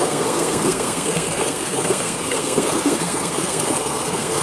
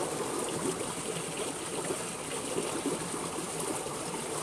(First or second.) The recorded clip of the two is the second